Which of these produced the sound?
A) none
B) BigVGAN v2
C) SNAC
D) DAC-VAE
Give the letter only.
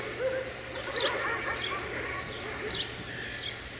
A